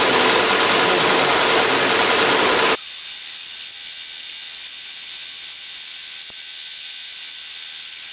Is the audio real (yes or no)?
yes